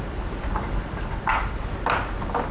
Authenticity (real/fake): real